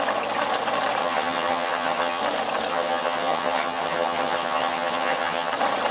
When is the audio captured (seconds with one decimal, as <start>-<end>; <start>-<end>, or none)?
0.0-1.0; 2.2-2.7; 5.5-5.9